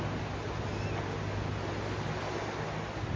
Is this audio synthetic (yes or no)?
no